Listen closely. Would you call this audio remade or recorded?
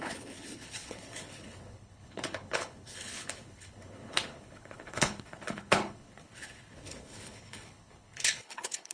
remade